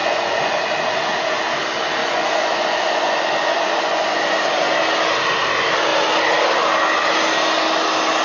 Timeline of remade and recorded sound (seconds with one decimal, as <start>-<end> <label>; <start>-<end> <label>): 0.0-0.6 remade; 0.6-2.0 recorded; 2.0-4.2 remade; 4.2-8.2 recorded